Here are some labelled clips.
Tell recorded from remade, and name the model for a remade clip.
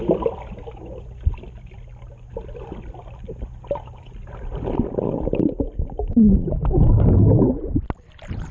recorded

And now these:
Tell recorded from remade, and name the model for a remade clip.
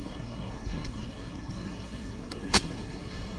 remade, codec, SNAC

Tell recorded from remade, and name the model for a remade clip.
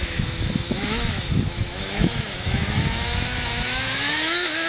remade, autoencoder, DAC-VAE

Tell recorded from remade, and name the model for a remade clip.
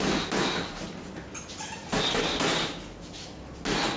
recorded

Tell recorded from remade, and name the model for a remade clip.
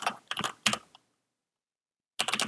recorded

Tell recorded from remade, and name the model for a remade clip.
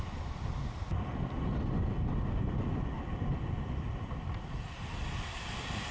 recorded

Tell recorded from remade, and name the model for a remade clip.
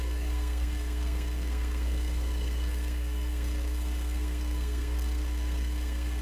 remade, codec, SNAC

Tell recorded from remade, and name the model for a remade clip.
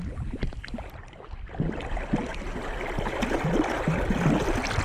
recorded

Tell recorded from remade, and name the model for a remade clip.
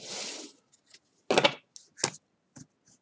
recorded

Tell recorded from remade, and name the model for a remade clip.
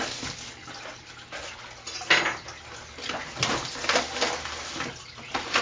recorded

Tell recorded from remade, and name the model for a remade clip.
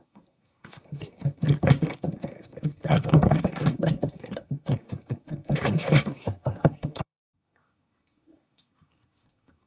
remade, codec, SNAC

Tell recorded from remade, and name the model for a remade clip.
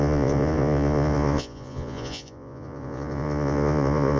remade, vocoder, Vocos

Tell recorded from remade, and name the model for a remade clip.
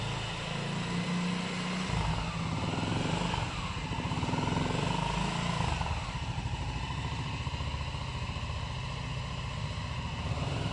recorded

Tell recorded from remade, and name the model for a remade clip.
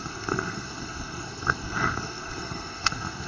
remade, codec, SNAC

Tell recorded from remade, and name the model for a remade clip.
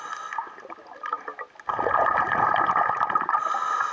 recorded